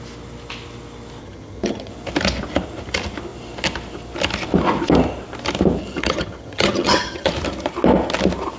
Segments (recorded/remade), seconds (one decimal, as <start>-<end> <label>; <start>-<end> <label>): 0.0-1.2 recorded; 1.2-1.9 remade; 1.9-5.8 recorded; 5.8-7.3 remade; 7.3-8.6 recorded

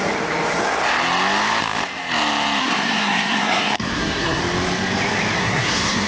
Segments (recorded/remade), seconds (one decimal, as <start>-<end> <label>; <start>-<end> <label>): 0.0-2.6 recorded; 2.6-4.4 remade; 4.4-5.4 recorded; 5.4-6.1 remade

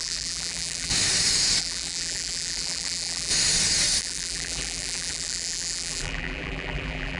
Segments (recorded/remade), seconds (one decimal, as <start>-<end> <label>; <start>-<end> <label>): 0.0-0.9 remade; 0.9-1.6 recorded; 1.6-3.3 remade; 3.3-4.0 recorded; 4.0-7.2 remade

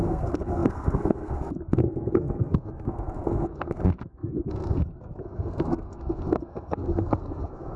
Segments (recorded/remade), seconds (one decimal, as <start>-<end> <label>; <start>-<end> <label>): 0.0-7.8 remade